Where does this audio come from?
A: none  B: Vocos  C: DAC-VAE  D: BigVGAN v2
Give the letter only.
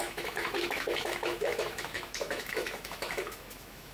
C